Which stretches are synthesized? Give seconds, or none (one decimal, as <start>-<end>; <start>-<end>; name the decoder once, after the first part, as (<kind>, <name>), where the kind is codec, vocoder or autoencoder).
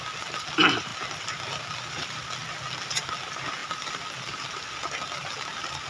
0.9-1.7 (vocoder, BigVGAN v2)